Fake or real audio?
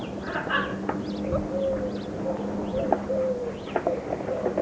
real